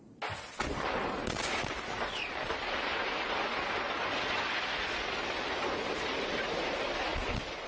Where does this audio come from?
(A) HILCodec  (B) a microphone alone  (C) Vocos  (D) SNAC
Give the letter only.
B